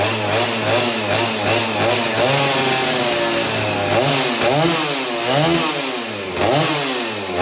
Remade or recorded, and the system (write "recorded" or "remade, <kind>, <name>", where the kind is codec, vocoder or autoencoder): recorded